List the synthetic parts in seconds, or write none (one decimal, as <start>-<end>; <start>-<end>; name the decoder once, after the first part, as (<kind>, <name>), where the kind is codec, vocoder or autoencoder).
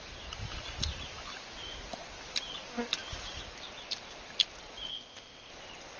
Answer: 4.9-5.5 (codec, ZipCodec)